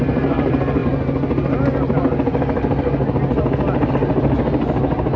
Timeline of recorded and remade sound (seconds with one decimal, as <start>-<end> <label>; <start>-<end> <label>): 0.0-5.2 recorded